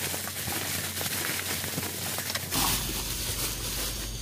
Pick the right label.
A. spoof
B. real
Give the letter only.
B